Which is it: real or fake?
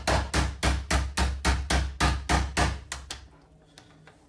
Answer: real